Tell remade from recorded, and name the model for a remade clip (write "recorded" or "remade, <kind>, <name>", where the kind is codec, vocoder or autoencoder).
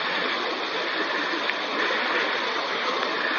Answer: recorded